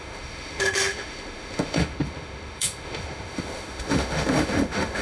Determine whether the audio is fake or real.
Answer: fake